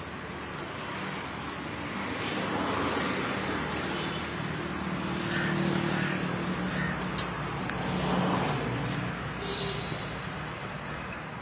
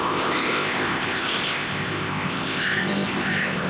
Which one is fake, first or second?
second